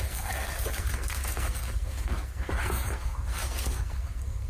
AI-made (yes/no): yes